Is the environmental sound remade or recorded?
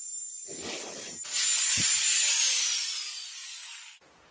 recorded